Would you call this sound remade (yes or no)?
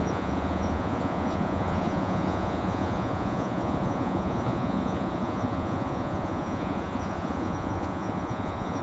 yes